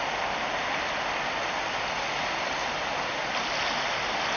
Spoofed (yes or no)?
no